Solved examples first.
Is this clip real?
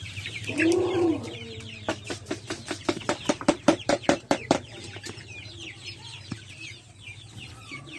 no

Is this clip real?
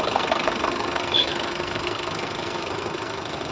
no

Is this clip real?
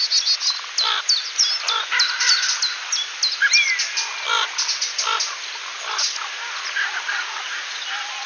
yes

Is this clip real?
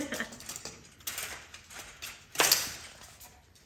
yes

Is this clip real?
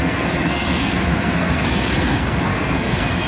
no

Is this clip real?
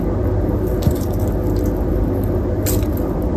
yes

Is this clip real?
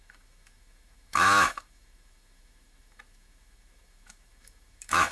no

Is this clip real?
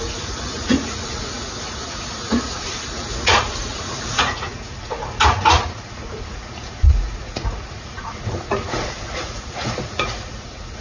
no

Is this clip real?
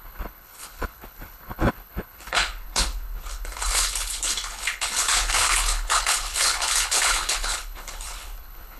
no